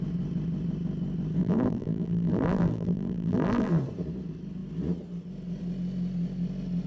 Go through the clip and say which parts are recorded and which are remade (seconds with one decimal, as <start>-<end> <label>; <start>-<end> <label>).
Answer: 0.0-1.4 recorded; 1.4-3.7 remade; 3.7-6.9 recorded